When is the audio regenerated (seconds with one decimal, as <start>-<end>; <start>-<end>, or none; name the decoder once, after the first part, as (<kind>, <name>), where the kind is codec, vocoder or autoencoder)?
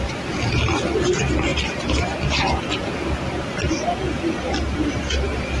none